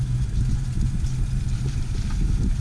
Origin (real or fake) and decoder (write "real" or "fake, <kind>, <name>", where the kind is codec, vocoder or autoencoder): real